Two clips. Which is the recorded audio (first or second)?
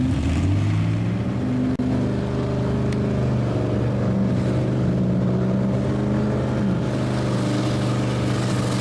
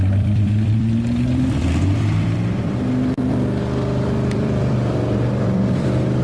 first